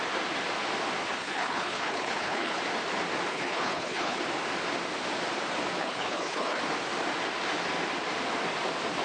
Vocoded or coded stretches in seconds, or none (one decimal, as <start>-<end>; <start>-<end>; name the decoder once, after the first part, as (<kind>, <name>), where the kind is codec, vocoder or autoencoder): 1.2-2.6 (codec, HILCodec); 3.3-4.2; 5.8-6.6